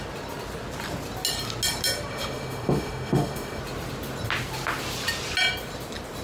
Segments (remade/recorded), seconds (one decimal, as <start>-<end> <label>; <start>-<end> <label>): 0.0-2.1 recorded; 2.1-3.6 remade; 3.6-6.2 recorded